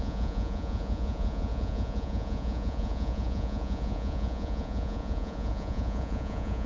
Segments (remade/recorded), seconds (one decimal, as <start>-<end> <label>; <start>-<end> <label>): 0.0-6.7 remade